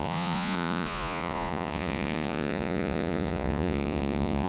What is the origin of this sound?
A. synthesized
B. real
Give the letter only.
A